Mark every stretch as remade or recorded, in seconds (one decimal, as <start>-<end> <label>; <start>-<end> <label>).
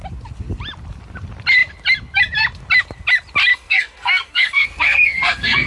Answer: 0.0-3.5 recorded; 3.5-5.7 remade